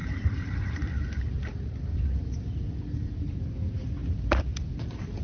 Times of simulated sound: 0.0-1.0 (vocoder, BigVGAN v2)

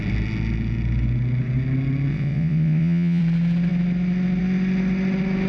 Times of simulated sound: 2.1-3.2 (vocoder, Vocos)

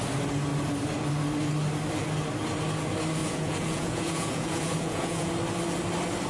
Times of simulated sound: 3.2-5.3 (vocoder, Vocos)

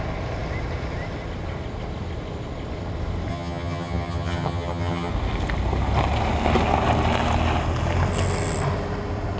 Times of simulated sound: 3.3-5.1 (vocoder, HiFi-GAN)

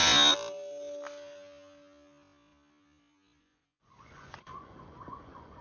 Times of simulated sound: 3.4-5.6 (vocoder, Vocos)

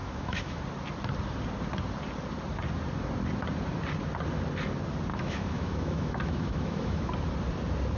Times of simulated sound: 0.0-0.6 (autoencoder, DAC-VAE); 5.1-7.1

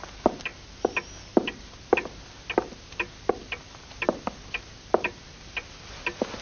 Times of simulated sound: none